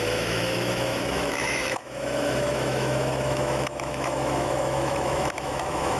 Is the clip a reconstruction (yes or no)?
yes